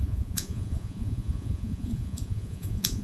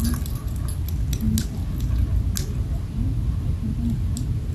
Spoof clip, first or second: first